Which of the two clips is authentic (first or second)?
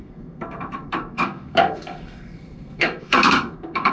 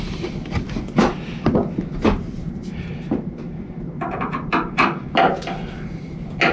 second